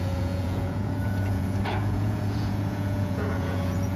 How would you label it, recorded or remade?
remade